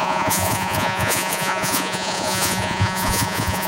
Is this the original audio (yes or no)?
no